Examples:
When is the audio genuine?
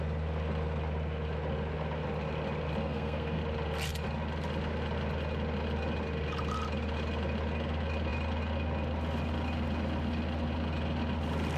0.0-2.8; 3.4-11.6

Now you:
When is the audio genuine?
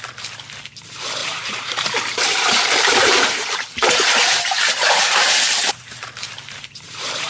0.0-1.2; 3.9-4.8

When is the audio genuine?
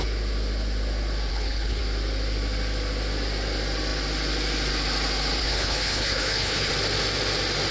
0.0-1.3; 1.8-5.4; 6.7-7.7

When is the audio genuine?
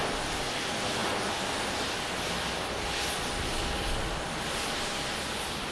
0.0-5.7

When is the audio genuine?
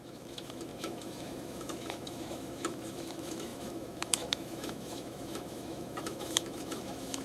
none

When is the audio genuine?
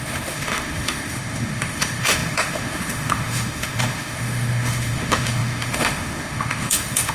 none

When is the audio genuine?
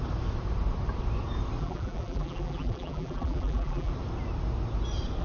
0.0-1.6; 3.9-5.2